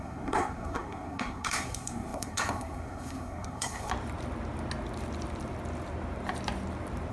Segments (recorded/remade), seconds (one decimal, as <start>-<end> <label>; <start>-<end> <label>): 0.0-3.9 remade; 3.9-7.1 recorded